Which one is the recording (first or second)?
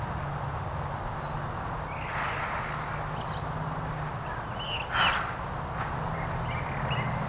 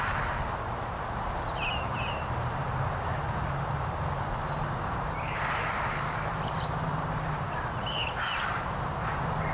first